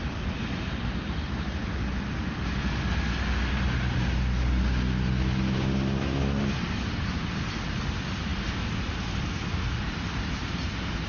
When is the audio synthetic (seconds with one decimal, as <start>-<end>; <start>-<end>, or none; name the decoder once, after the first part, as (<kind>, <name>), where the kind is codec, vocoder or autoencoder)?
none